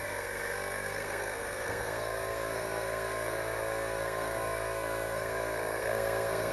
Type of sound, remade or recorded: remade